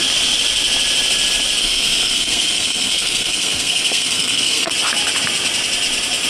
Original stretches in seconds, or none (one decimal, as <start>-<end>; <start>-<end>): 0.0-1.6; 4.7-6.3